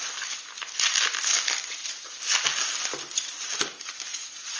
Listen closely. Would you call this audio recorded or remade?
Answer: recorded